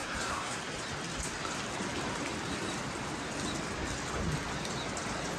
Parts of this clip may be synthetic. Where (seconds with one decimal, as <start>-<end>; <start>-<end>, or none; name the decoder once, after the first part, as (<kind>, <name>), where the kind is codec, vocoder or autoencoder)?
0.0-0.6 (codec, SNAC)